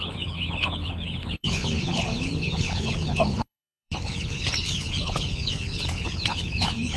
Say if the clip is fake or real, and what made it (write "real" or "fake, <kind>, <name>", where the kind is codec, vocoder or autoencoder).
fake, codec, HILCodec